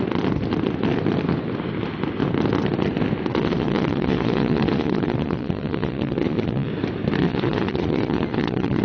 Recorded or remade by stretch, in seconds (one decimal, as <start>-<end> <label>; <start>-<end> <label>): 0.0-3.3 recorded; 3.3-6.7 remade; 6.7-7.2 recorded; 7.2-8.8 remade